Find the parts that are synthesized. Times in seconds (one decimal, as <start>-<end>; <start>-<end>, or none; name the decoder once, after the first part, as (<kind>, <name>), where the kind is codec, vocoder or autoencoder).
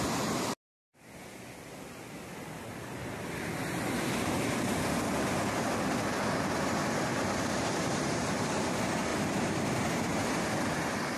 7.1-8.7 (vocoder, BigVGAN v2); 9.1-10.4